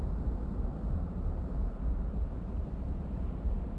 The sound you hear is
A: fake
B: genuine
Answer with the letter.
B